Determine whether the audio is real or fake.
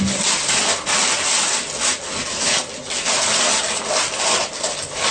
real